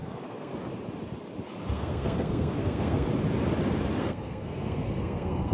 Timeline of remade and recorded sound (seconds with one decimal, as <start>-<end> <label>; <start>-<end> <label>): 0.0-0.5 remade; 0.5-1.7 recorded; 1.7-3.1 remade; 3.1-4.0 recorded; 4.0-5.5 remade